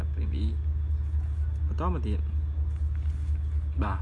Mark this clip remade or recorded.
recorded